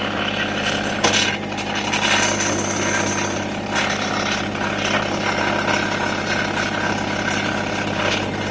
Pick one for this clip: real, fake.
real